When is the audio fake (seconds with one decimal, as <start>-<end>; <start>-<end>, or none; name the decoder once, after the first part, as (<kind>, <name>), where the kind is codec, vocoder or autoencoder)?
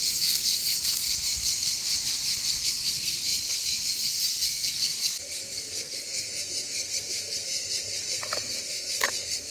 0.0-1.8 (codec, SNAC); 2.6-9.5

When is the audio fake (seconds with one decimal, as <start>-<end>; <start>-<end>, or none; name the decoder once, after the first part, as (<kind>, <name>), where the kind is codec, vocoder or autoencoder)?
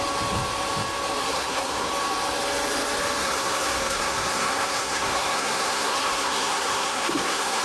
1.2-1.9 (codec, SNAC); 3.2-7.6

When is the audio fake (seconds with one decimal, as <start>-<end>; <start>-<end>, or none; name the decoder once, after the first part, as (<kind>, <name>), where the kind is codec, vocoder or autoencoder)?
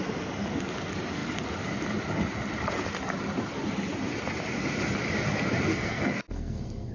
5.7-6.9 (codec, SNAC)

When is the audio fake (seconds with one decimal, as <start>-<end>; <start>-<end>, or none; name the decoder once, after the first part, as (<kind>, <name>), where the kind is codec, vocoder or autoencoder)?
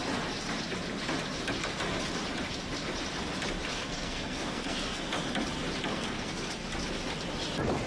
3.7-5.1 (codec, SNAC); 5.9-6.5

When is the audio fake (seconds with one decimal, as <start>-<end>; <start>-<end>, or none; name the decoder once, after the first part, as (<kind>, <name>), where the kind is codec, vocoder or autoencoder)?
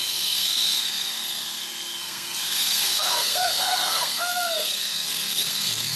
0.0-6.0 (codec, SNAC)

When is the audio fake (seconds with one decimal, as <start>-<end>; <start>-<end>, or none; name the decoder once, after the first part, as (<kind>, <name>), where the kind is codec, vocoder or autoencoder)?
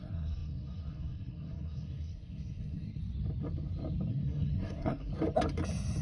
0.0-3.0 (codec, SNAC); 4.1-5.1